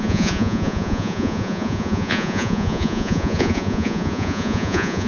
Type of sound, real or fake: fake